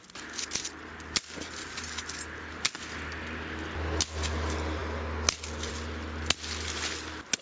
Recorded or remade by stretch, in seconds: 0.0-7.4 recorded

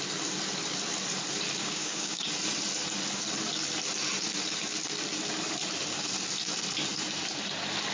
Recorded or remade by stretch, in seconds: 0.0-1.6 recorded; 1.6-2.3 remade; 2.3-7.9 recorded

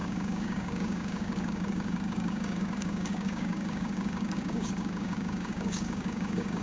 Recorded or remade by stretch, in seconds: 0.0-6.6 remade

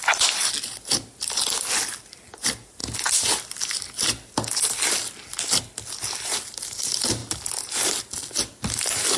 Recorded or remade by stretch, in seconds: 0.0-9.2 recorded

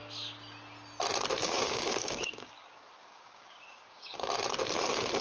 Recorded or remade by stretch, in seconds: 0.0-1.4 recorded; 1.4-4.3 remade; 4.3-5.2 recorded

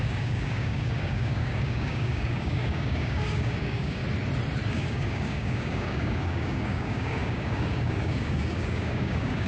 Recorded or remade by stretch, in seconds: 0.0-4.0 remade; 4.0-4.7 recorded; 4.7-9.5 remade

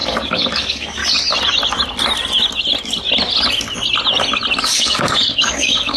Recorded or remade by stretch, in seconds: 0.0-1.0 remade; 1.0-4.6 recorded; 4.6-6.0 remade